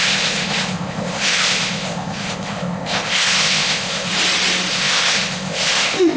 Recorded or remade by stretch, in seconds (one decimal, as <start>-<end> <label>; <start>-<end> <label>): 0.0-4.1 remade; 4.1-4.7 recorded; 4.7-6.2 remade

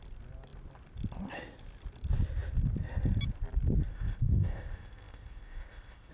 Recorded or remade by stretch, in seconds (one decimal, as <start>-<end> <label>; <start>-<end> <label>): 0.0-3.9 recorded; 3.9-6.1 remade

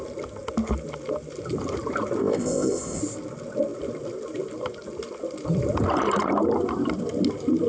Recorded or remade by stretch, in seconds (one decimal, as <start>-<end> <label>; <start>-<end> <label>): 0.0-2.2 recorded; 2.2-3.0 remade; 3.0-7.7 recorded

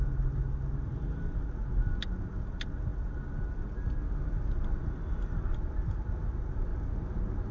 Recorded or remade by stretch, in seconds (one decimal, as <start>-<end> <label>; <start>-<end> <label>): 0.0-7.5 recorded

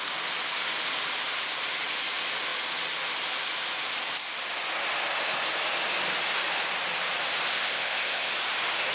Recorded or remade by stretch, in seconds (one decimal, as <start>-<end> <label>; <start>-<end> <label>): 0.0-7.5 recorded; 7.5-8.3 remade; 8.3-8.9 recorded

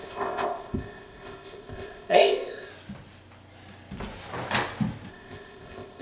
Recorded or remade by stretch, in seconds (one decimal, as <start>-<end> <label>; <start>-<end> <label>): 0.0-2.7 remade; 2.7-5.1 recorded; 5.1-6.0 remade

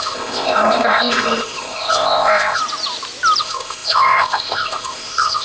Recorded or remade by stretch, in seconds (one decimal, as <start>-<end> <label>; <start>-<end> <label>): 0.0-2.6 remade; 2.6-3.4 recorded; 3.4-5.4 remade

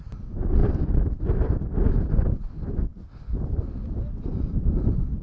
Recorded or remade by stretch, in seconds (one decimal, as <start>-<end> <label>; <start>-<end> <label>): 0.0-5.2 recorded